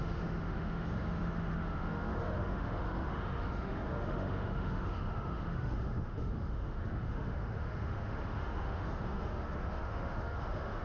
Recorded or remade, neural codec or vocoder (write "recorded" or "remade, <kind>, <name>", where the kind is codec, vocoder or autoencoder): remade, autoencoder, DAC-VAE